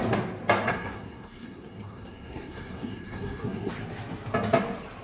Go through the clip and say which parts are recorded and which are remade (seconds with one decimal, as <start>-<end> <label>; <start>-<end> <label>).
0.0-0.7 recorded; 0.7-3.7 remade; 3.7-5.0 recorded